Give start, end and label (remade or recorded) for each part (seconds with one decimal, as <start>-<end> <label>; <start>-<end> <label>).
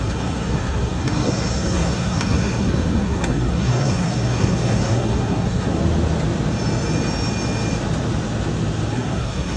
0.0-5.8 remade; 5.8-8.9 recorded; 8.9-9.6 remade